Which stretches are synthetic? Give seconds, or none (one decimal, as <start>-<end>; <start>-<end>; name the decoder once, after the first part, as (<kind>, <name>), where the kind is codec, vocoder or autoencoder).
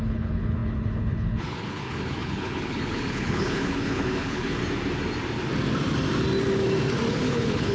0.0-4.6 (codec, HILCodec); 7.1-7.7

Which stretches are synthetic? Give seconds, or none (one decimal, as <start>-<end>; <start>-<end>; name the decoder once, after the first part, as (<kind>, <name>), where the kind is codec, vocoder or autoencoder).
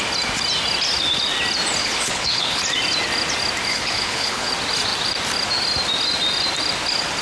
1.8-2.6 (codec, HILCodec); 3.7-4.5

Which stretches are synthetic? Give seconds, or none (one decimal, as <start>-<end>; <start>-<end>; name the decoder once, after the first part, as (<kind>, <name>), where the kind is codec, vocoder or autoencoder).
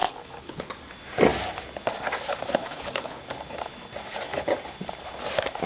0.0-0.9 (codec, HILCodec); 2.6-3.2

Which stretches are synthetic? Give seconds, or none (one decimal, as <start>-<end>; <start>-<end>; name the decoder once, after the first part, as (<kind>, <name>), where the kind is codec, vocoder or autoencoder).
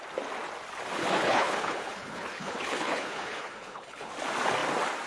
1.0-4.1 (codec, HILCodec)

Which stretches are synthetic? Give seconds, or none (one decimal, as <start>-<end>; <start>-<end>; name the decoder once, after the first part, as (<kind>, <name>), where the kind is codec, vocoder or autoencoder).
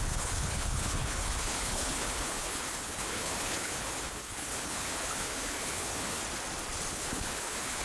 0.0-6.2 (codec, HILCodec); 6.9-7.8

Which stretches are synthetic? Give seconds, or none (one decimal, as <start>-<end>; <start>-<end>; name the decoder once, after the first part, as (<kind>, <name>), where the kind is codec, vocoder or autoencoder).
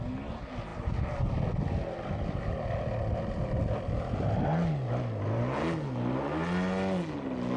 none